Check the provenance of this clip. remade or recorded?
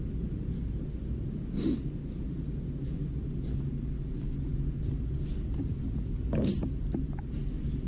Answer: recorded